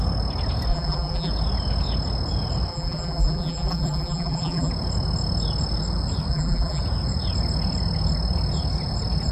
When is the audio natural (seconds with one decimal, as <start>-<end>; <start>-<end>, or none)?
0.0-0.7; 1.3-2.7; 4.7-6.3; 6.8-9.3